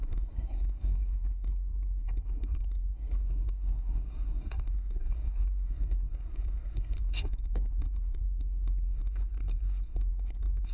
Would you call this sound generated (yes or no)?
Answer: yes